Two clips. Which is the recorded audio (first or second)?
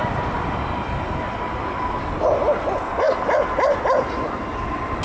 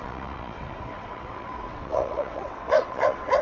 first